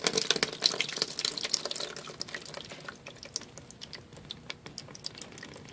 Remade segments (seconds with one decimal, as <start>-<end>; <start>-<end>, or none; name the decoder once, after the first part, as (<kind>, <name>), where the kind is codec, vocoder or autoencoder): none